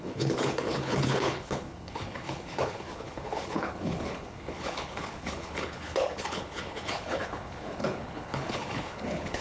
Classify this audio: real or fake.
fake